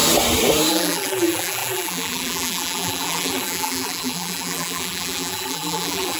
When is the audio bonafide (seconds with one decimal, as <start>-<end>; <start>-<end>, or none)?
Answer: 0.0-0.7